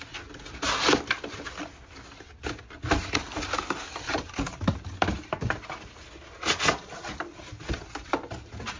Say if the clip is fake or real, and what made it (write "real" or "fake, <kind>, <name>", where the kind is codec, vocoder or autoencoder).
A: real